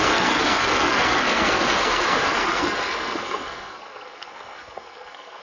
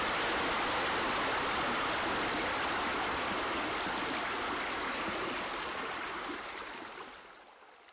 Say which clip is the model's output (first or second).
first